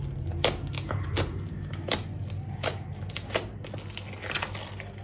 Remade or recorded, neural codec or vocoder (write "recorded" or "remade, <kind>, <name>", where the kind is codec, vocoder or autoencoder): recorded